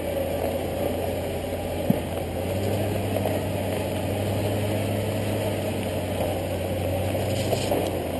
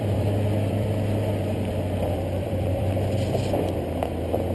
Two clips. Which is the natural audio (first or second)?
first